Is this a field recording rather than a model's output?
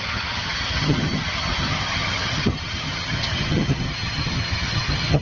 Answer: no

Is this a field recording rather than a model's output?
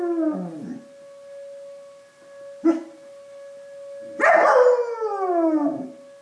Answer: yes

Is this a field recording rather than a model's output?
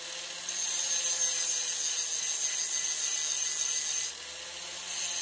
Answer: yes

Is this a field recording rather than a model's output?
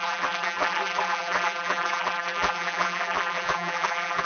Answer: no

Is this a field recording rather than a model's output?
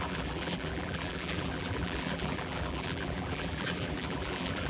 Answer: no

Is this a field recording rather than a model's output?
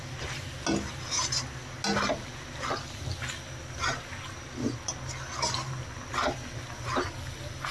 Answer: yes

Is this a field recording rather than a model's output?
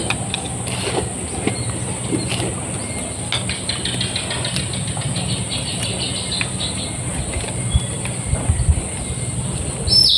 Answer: yes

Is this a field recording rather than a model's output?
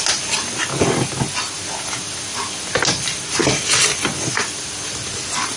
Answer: yes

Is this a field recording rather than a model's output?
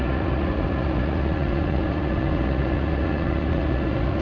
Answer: no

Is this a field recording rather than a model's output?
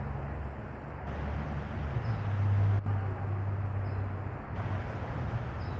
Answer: yes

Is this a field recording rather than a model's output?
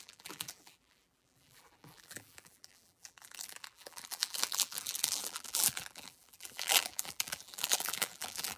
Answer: no